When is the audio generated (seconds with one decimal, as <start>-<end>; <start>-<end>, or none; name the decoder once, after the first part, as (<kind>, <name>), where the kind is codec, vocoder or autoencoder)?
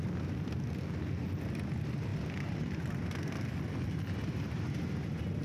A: none